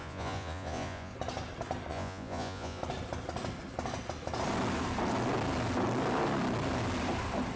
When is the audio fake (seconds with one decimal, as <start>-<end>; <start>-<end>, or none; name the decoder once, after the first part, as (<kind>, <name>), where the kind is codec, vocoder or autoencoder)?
0.0-1.1 (vocoder, Vocos); 1.9-2.8